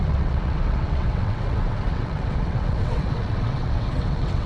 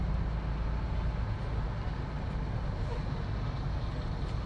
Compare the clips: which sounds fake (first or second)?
first